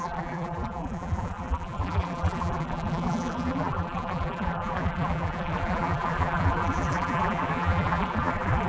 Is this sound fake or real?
fake